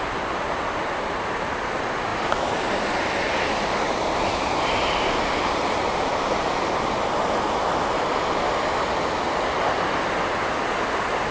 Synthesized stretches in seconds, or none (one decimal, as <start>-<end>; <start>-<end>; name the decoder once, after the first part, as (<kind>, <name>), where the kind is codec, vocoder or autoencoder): none